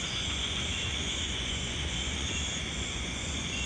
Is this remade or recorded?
remade